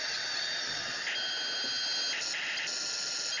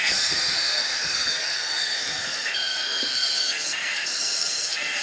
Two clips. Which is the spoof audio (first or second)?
second